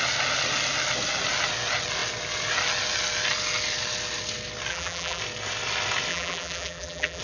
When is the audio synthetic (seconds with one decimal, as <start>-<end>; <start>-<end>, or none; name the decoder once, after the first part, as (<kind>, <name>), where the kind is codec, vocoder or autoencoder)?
4.7-5.2 (vocoder, BigVGAN v2); 6.1-7.2